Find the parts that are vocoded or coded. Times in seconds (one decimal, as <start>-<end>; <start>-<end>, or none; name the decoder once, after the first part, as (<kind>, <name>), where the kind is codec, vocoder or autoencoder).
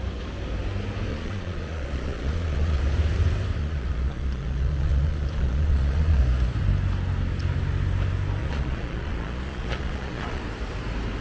1.1-2.8 (vocoder, Vocos); 3.6-6.2; 8.4-10.4